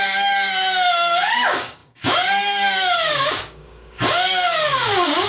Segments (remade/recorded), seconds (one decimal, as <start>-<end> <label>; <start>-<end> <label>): 0.0-5.3 remade